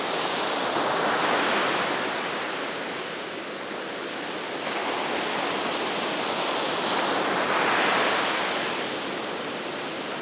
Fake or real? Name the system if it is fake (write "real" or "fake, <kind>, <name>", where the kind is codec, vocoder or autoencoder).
real